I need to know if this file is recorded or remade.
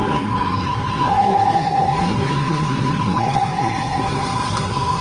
remade